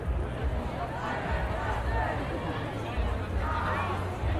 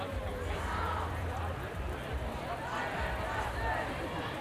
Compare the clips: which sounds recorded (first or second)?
first